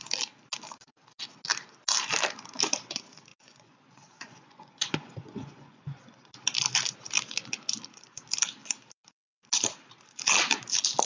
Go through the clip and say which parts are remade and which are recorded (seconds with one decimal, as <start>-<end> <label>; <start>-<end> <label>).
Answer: 0.0-3.3 recorded; 3.3-6.0 remade; 6.0-11.1 recorded